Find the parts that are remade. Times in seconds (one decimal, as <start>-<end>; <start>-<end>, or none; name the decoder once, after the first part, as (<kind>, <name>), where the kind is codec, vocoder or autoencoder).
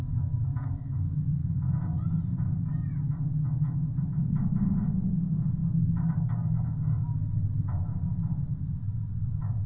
0.0-1.4 (codec, DAC); 5.1-7.1; 8.6-9.7